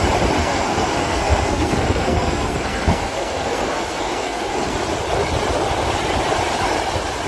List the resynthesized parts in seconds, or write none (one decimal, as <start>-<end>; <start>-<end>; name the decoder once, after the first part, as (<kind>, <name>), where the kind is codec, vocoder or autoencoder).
0.4-4.8 (codec, SNAC)